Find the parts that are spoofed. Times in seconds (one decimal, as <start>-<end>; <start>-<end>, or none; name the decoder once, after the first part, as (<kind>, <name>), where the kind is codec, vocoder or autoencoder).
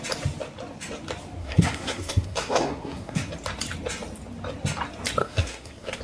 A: 1.4-3.3 (codec, SNAC); 5.2-6.0